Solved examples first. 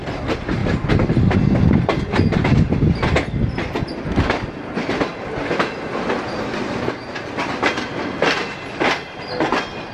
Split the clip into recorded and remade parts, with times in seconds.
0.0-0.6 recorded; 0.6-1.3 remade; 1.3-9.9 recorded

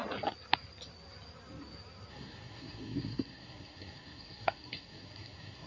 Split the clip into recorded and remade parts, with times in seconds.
0.0-2.1 recorded; 2.1-5.7 remade

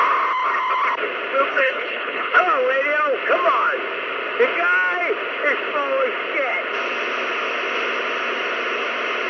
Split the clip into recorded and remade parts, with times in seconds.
0.0-1.5 recorded; 1.5-2.4 remade; 2.4-9.3 recorded

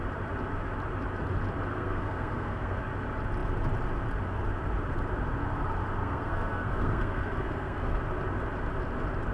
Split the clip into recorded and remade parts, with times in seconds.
0.0-1.7 recorded; 1.7-2.8 remade; 2.8-6.0 recorded; 6.0-8.0 remade; 8.0-9.3 recorded

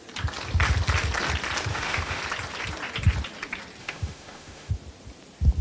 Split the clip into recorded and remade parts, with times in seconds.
0.0-1.7 recorded; 1.7-2.2 remade; 2.2-3.8 recorded; 3.8-4.7 remade; 4.7-5.6 recorded